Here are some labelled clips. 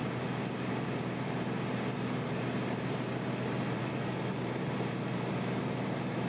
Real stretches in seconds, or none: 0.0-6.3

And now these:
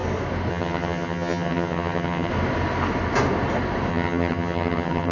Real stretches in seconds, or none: 0.0-0.5; 2.3-3.9

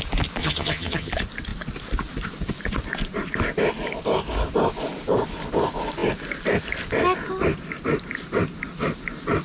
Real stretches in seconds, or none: 0.0-0.4; 1.1-9.4

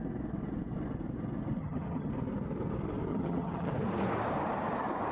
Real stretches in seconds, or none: 0.0-1.6; 2.1-3.1; 3.7-5.1

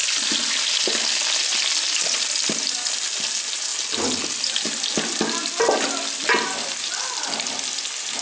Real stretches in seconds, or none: 0.0-8.2

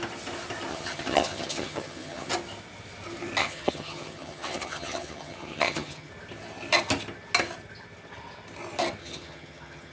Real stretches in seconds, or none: 0.0-0.7; 2.3-3.4; 6.1-9.0

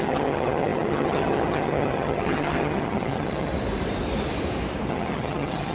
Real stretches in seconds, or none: 3.5-4.9

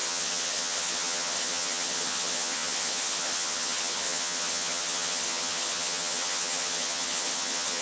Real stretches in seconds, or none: none